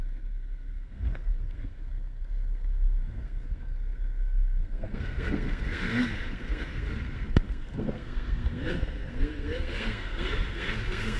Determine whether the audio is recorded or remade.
remade